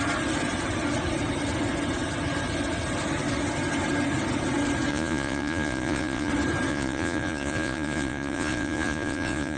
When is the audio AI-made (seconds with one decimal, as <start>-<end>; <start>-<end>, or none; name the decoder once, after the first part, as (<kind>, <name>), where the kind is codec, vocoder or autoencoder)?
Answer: 4.9-6.3 (vocoder, Vocos); 6.7-9.6

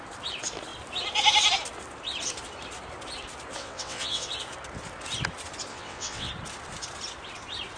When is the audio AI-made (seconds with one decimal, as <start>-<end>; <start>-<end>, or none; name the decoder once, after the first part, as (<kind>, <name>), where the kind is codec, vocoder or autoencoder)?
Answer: 3.6-4.3 (vocoder, WaveNeXt); 5.7-6.3

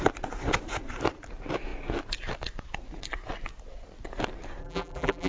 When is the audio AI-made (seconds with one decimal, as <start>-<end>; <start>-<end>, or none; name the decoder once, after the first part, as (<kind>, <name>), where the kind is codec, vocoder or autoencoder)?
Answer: 4.6-5.3 (vocoder, BigVGAN v2)

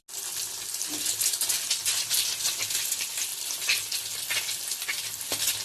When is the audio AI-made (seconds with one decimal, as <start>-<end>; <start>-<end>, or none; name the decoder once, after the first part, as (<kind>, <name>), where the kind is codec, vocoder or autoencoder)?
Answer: none

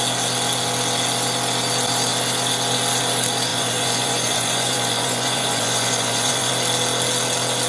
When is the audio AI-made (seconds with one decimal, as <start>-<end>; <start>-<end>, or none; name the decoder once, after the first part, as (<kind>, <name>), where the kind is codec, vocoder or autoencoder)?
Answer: 3.5-6.5 (vocoder, Vocos)